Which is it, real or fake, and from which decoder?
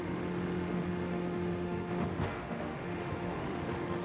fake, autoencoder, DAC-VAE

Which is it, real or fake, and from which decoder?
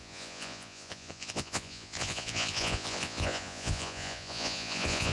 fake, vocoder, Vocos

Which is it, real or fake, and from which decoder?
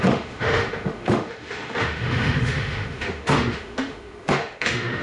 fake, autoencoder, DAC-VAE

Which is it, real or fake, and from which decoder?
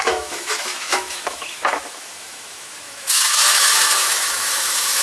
fake, autoencoder, DAC-VAE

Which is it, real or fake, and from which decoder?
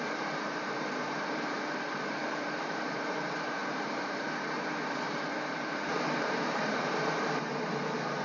fake, vocoder, BigVGAN v2